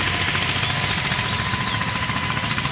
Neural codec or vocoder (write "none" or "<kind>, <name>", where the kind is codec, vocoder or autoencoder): none